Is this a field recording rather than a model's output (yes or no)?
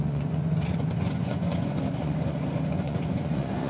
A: no